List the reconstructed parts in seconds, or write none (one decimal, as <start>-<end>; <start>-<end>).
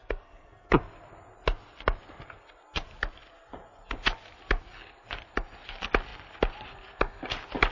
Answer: 0.0-0.7